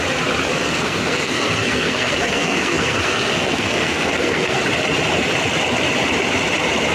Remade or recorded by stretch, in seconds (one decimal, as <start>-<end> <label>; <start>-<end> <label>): 0.0-0.5 recorded; 0.5-4.6 remade; 4.6-6.9 recorded